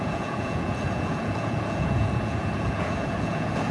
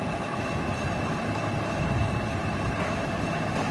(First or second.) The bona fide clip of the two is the second